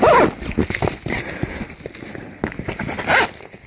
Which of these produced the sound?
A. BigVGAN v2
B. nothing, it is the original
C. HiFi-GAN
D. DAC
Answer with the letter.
B